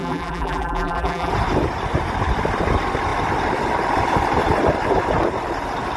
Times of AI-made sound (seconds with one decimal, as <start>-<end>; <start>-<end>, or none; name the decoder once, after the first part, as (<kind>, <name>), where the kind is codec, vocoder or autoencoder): 0.0-1.3 (vocoder, BigVGAN v2)